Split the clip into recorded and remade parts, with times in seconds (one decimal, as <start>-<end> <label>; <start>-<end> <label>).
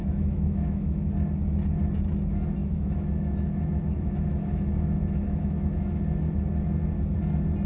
0.0-1.1 remade; 1.1-2.6 recorded; 2.6-6.0 remade; 6.0-7.7 recorded